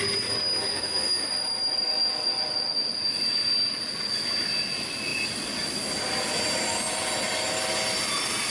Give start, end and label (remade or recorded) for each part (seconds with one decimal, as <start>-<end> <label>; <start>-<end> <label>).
0.0-0.7 recorded; 0.7-1.3 remade; 1.3-8.5 recorded